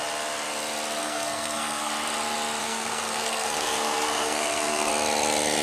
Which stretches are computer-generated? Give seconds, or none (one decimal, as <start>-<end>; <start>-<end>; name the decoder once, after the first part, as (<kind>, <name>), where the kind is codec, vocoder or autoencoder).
1.0-1.9 (codec, SNAC); 2.6-4.9